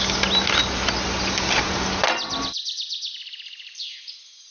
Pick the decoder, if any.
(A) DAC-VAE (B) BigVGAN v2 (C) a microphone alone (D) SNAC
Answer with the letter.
C